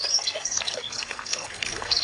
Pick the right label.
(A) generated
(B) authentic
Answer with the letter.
A